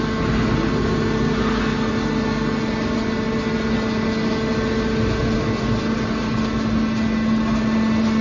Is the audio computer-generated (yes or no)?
no